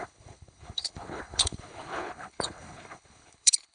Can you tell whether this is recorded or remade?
remade